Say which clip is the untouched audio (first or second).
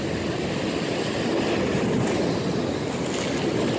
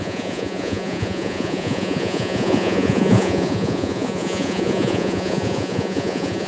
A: first